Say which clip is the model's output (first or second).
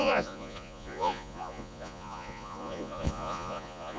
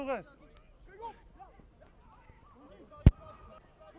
first